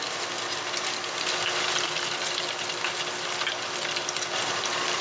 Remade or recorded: recorded